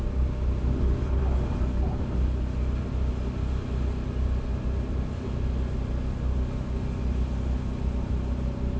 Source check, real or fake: real